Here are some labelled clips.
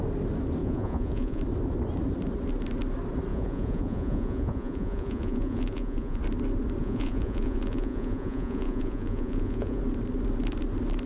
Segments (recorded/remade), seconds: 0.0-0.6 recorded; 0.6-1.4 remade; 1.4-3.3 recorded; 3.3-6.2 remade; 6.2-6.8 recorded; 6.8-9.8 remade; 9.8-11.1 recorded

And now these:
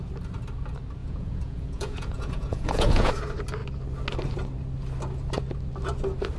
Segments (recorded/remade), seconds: 0.0-1.0 recorded; 1.0-3.1 remade; 3.1-6.4 recorded

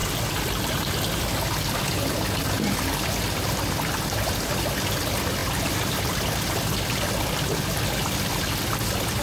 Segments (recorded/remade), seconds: 0.0-9.2 recorded

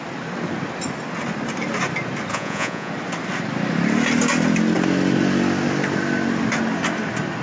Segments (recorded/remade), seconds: 0.0-2.3 recorded; 2.3-2.9 remade; 2.9-7.4 recorded

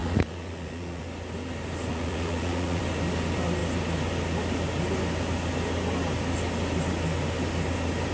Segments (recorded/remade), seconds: 0.0-1.0 remade; 1.0-1.9 recorded; 1.9-2.8 remade; 2.8-8.1 recorded